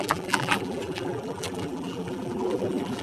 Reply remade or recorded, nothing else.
remade